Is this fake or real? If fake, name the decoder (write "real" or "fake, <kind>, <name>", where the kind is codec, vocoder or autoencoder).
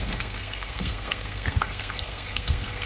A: fake, codec, SNAC